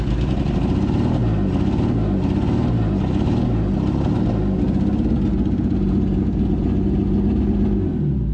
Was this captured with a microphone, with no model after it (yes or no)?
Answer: yes